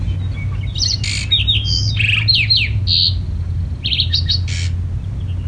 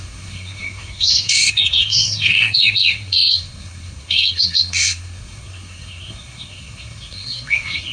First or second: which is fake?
second